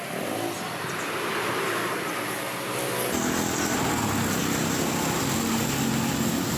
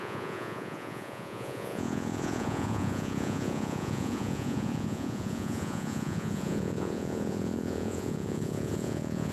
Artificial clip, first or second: second